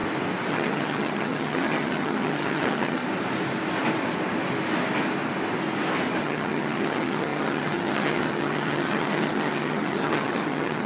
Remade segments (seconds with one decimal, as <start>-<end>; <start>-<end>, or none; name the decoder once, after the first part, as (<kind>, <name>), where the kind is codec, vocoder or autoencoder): 0.5-3.0 (vocoder, HiFi-GAN); 6.2-10.9